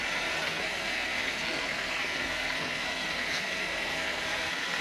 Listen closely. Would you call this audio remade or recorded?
remade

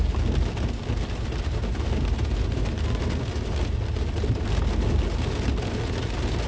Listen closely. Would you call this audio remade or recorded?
recorded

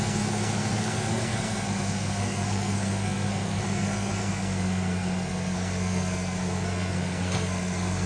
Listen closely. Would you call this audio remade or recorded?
remade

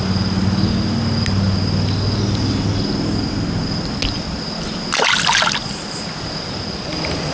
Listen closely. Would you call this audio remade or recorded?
recorded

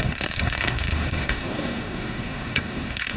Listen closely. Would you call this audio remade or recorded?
remade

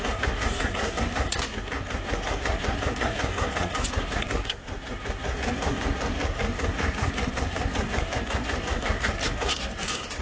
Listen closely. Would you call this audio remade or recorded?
remade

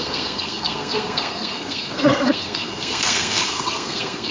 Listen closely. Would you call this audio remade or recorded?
remade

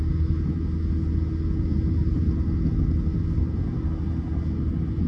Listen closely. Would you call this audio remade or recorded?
recorded